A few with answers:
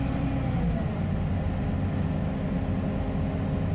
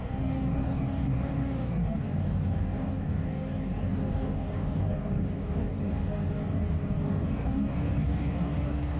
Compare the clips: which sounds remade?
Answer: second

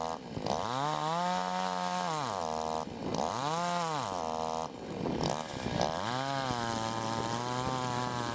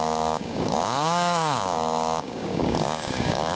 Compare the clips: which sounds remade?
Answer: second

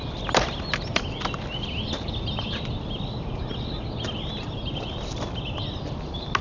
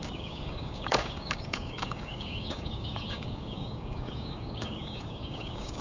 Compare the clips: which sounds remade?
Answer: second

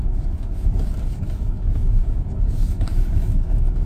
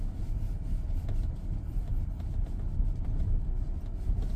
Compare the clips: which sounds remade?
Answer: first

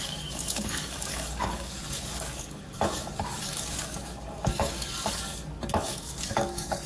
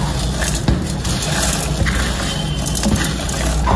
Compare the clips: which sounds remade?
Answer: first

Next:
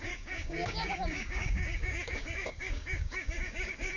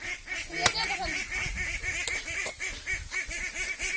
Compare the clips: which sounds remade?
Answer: first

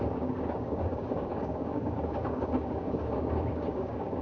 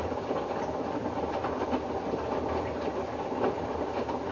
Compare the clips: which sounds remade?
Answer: first